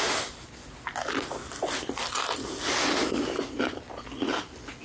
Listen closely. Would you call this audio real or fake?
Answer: real